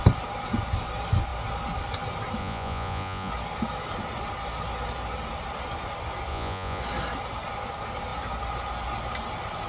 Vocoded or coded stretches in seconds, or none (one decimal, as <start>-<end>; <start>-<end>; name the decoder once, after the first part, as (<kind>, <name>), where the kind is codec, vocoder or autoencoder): 2.4-3.3 (vocoder, Vocos); 6.3-6.8